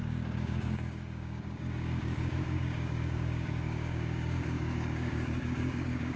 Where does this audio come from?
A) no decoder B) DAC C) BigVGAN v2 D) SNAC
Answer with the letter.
B